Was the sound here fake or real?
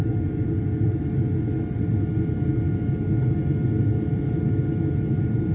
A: real